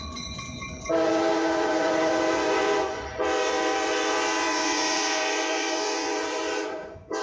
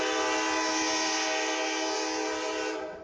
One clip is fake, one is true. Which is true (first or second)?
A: second